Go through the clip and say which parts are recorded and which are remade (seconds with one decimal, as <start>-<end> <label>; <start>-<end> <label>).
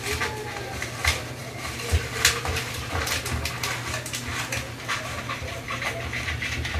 0.0-6.8 recorded